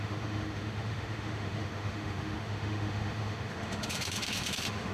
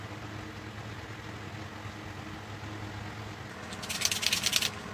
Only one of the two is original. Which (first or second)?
second